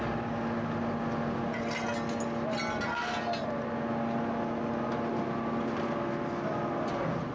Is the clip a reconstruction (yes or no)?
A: no